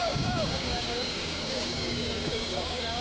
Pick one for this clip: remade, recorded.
remade